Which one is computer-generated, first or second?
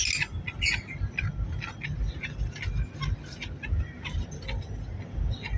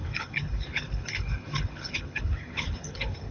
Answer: second